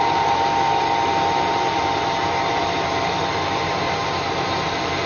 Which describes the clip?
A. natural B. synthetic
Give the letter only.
B